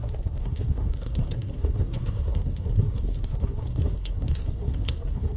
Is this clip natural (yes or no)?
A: no